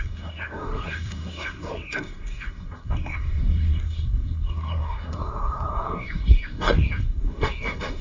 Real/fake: fake